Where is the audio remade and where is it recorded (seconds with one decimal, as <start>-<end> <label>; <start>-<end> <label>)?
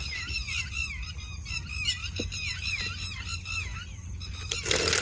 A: 0.0-5.0 recorded